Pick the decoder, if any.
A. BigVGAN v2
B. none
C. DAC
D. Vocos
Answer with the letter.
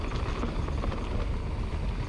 B